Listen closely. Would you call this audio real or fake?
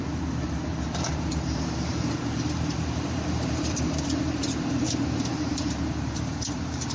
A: fake